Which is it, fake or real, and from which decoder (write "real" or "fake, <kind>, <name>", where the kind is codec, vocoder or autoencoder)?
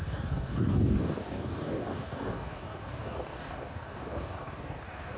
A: fake, codec, DAC